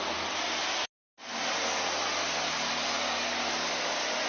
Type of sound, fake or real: real